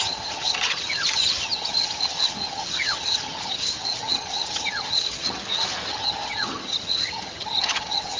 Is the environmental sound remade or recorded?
remade